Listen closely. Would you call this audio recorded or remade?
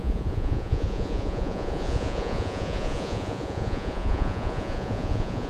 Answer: remade